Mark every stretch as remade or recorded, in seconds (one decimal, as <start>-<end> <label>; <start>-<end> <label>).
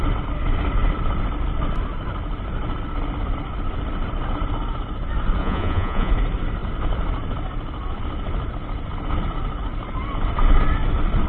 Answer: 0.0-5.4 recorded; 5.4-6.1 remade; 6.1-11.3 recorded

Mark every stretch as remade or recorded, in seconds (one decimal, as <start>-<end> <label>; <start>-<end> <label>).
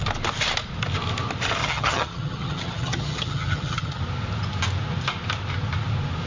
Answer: 0.0-1.6 recorded; 1.6-4.0 remade; 4.0-6.3 recorded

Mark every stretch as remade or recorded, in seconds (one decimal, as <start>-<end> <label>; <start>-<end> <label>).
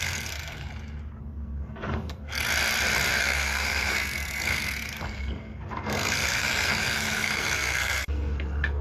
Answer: 0.0-0.7 remade; 0.7-1.2 recorded; 1.2-2.4 remade; 2.4-3.2 recorded; 3.2-8.8 remade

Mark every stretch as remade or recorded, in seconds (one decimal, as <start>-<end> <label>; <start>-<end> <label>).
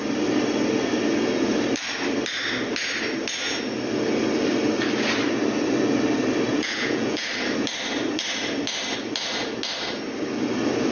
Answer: 0.0-6.5 recorded; 6.5-7.3 remade; 7.3-10.9 recorded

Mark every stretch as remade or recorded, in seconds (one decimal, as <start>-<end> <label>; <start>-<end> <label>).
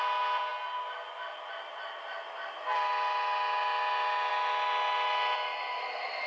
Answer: 0.0-6.3 recorded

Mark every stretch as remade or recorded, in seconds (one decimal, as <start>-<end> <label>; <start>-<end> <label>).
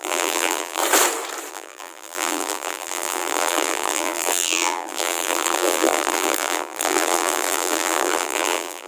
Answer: 0.0-0.8 remade; 0.8-1.5 recorded; 1.5-8.9 remade